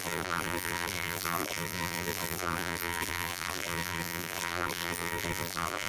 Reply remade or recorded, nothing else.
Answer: remade